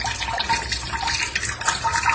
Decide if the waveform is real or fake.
real